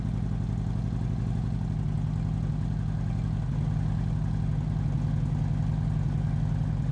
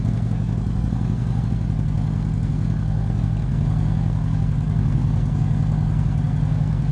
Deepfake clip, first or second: second